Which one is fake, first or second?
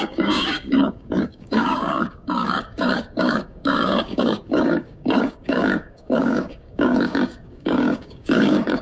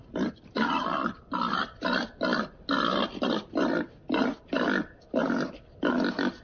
first